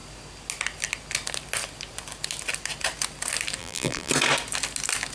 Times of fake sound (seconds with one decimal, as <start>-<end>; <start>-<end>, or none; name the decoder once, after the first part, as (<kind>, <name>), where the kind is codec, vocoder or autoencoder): 3.6-4.1 (vocoder, BigVGAN v2)